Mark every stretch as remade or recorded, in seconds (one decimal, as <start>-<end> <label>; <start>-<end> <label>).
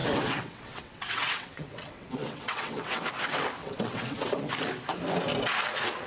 0.0-3.1 remade; 3.1-3.6 recorded; 3.6-4.5 remade; 4.5-6.1 recorded